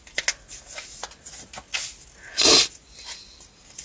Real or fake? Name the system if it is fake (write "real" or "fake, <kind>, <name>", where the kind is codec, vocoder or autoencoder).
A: real